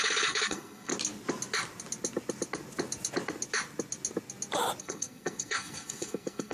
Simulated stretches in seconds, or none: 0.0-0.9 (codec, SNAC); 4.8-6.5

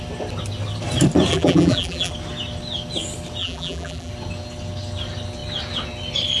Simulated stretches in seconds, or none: 1.3-2.1 (vocoder, BigVGAN v2); 3.4-4.1

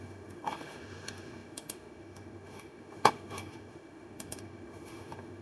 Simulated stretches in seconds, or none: 0.0-5.4 (autoencoder, DAC-VAE)

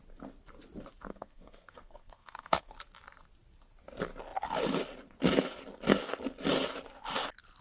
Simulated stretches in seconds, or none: 1.1-2.7 (codec, SNAC)

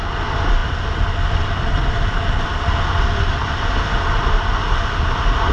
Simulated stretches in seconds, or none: none

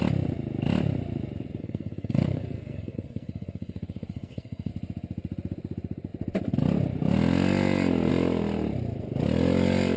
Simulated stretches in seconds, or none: 1.6-4.7 (codec, SNAC)